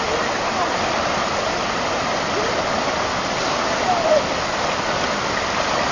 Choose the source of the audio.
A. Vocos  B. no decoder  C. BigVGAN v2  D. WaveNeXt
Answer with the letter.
B